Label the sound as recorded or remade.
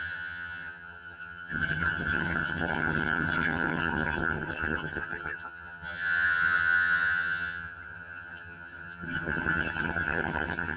remade